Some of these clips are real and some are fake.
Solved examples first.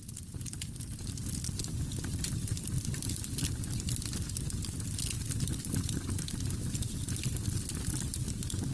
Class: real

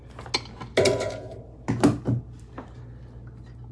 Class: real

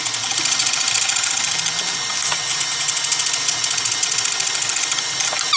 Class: real